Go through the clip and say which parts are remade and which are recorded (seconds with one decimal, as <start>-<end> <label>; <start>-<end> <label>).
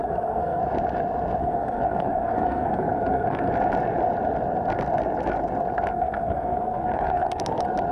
0.0-0.6 remade; 0.6-1.4 recorded; 1.4-3.5 remade; 3.5-5.9 recorded; 5.9-7.4 remade; 7.4-7.9 recorded